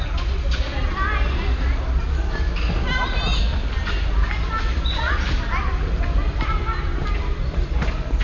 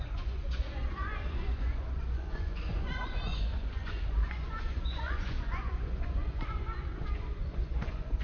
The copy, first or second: second